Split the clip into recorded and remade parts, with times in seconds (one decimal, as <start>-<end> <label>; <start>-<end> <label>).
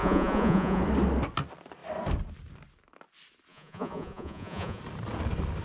0.0-0.8 remade; 0.8-3.5 recorded; 3.5-4.8 remade; 4.8-5.6 recorded